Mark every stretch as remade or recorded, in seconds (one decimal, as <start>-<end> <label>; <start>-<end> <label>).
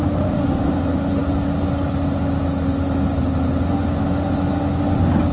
0.0-5.3 recorded